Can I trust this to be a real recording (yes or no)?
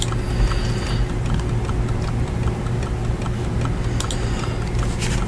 yes